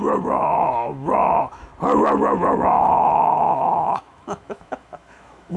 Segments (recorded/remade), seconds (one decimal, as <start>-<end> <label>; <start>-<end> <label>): 0.0-1.7 remade; 1.7-3.4 recorded; 3.4-5.6 remade